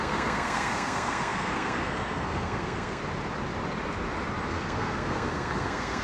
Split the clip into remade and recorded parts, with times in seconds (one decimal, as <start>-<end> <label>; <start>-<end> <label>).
0.0-3.0 remade; 3.0-4.5 recorded; 4.5-6.0 remade